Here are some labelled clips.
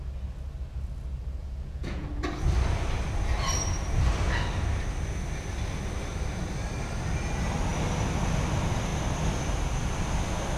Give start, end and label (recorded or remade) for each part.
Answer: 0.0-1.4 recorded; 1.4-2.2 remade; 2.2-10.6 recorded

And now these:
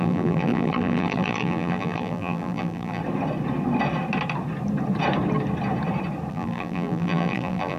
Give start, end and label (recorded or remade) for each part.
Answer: 0.0-3.0 remade; 3.0-6.3 recorded; 6.3-7.8 remade

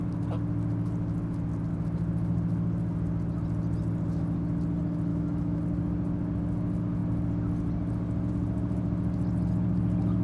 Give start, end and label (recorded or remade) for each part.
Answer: 0.0-5.1 recorded; 5.1-5.6 remade; 5.6-10.2 recorded